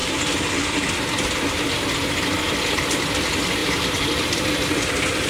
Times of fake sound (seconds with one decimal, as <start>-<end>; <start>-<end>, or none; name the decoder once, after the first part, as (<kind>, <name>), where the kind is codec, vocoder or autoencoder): 3.6-4.2 (vocoder, BigVGAN v2)